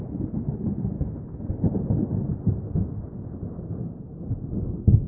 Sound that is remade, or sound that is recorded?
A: recorded